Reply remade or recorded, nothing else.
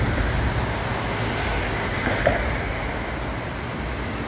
recorded